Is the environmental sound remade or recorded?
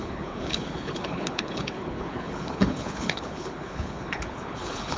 remade